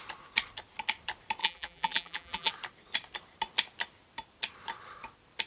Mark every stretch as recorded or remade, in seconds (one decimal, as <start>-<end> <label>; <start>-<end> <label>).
0.0-1.4 recorded; 1.4-2.5 remade; 2.5-5.5 recorded